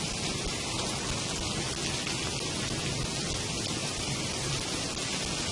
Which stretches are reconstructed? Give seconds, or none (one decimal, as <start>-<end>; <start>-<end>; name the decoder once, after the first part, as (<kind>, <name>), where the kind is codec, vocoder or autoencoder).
0.5-1.0 (vocoder, BigVGAN v2); 3.8-4.5